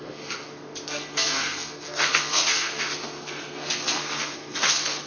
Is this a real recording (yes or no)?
no